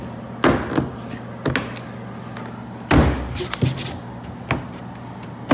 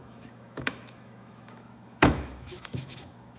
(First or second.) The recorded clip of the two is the first